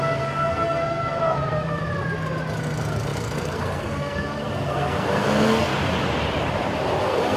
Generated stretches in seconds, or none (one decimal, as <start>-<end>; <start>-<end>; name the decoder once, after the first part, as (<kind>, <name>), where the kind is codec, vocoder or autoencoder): 0.0-1.8 (codec, SNAC); 2.6-5.7; 7.0-7.4